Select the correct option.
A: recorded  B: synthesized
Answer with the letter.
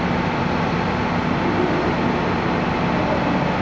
A